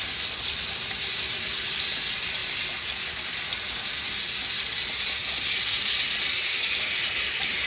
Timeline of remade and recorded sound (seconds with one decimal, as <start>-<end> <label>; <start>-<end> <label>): 0.0-7.7 recorded